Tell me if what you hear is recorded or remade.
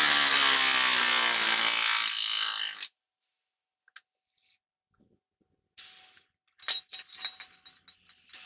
recorded